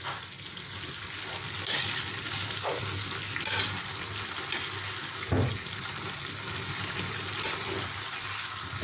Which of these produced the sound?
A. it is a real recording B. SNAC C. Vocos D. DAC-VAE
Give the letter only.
A